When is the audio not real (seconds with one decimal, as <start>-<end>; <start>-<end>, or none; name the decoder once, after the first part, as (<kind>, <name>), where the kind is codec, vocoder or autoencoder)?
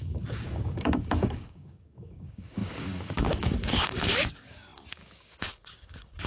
0.0-6.3 (codec, DAC)